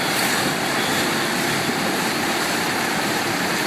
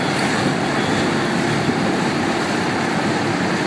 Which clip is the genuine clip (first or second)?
second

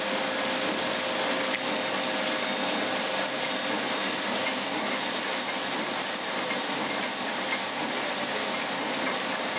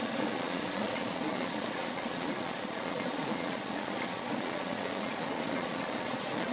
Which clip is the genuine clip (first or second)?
first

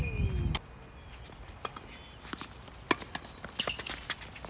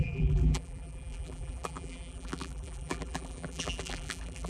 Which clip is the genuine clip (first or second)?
first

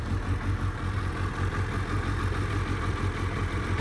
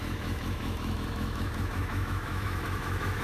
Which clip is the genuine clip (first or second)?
first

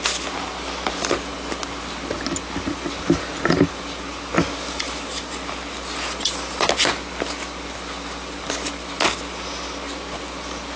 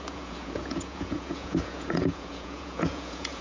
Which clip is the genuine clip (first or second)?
first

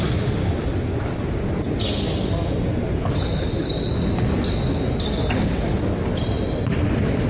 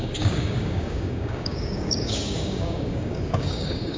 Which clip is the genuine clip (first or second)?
first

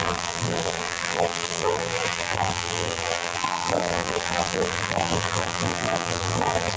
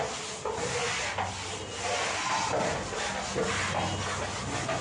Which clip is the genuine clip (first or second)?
second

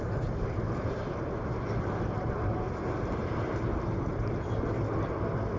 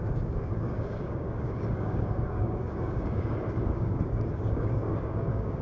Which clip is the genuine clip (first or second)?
first